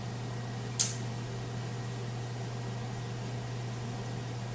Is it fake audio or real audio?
real